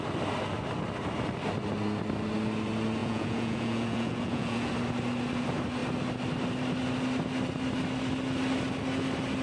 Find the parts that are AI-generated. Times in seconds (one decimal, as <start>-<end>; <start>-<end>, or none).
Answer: 3.0-4.7